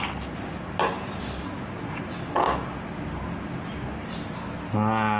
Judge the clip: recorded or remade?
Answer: recorded